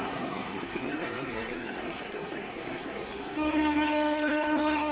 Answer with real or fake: fake